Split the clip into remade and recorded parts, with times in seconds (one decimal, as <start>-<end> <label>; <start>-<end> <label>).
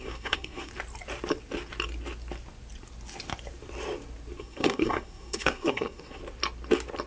0.0-0.7 remade; 0.7-4.4 recorded; 4.4-6.2 remade; 6.2-7.1 recorded